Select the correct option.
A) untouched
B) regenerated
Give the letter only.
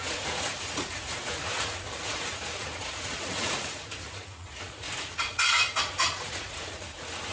B